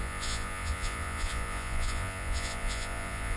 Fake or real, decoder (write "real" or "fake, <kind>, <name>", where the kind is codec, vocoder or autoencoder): fake, vocoder, Vocos